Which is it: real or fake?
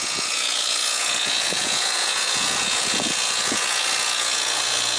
fake